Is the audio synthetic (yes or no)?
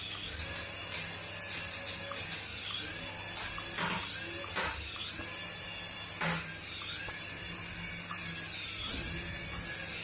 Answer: no